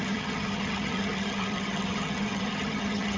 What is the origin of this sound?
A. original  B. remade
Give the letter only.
B